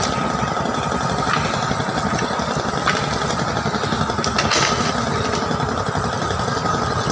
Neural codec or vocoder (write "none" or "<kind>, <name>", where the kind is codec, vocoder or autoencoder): none